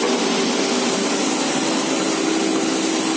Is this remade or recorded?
recorded